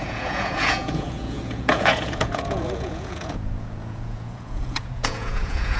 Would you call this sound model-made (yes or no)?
yes